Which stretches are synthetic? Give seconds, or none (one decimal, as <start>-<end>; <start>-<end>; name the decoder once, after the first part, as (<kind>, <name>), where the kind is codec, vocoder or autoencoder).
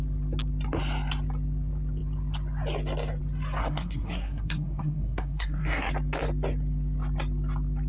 3.6-5.9 (codec, SNAC)